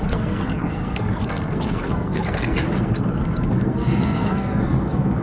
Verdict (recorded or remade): remade